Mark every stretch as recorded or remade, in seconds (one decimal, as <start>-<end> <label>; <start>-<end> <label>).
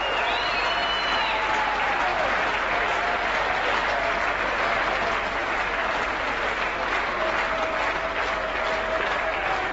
0.0-2.1 recorded; 2.1-3.4 remade; 3.4-9.7 recorded